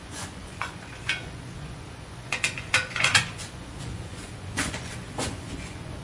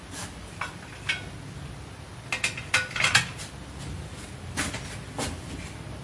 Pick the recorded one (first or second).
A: second